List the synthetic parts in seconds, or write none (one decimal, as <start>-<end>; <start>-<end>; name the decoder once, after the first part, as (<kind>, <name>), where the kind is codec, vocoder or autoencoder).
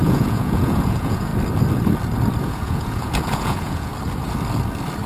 0.0-1.3 (vocoder, Vocos); 2.5-3.9